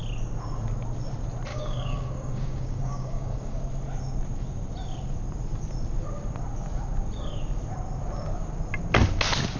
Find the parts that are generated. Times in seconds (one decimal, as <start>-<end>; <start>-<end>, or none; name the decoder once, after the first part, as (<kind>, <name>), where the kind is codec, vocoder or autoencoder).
1.5-3.6 (codec, DAC)